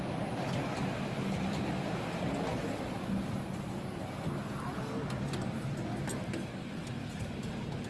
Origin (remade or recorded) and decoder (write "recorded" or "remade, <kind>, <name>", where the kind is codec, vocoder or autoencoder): recorded